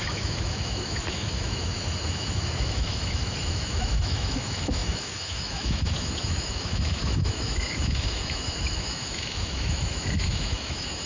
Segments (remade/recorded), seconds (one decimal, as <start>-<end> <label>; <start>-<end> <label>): 0.0-11.1 remade